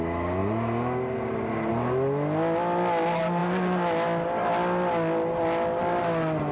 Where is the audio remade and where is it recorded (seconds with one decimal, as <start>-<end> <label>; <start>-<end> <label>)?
0.0-6.5 recorded